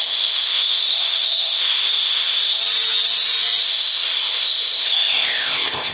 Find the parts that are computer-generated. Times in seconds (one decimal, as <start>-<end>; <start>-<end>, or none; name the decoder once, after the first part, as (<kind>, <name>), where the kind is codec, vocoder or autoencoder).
0.0-2.6 (codec, ZipCodec); 3.6-5.9